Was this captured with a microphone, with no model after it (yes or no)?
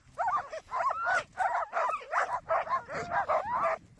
yes